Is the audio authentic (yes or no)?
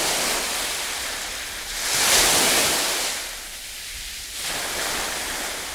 yes